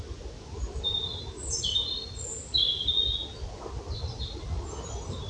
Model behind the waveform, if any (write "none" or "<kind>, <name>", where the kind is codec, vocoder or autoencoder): none